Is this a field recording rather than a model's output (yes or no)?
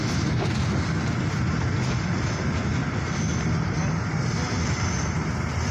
yes